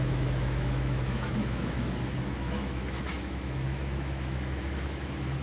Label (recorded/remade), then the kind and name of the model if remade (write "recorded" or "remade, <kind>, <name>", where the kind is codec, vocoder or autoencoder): remade, autoencoder, DAC-VAE